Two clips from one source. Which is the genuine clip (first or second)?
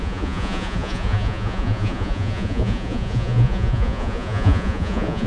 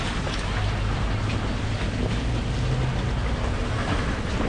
second